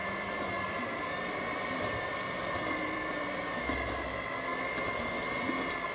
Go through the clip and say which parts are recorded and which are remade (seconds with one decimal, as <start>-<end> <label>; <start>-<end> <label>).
0.0-3.5 remade; 3.5-5.9 recorded